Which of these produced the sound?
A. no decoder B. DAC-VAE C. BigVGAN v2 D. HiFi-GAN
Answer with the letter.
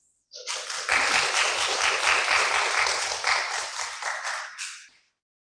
C